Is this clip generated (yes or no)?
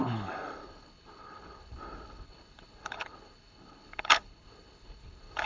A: yes